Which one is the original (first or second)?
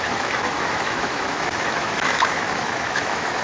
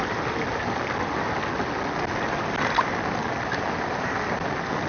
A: second